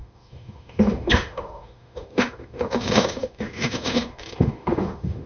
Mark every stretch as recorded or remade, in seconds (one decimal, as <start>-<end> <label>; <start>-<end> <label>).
0.0-5.3 remade